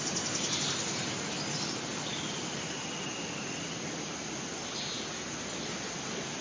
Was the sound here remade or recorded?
recorded